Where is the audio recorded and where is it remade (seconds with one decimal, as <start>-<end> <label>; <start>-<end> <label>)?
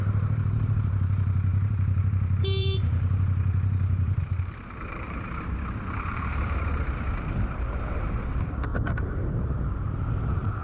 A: 0.0-8.7 remade; 8.7-9.5 recorded; 9.5-10.6 remade